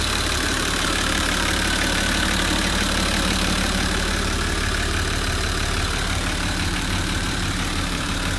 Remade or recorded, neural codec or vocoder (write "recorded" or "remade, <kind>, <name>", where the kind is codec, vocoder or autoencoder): remade, vocoder, BigVGAN v2